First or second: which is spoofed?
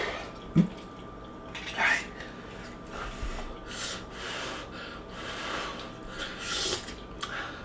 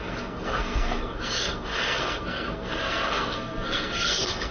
second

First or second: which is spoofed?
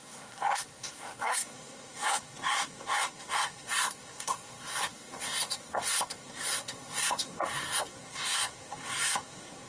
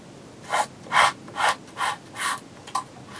first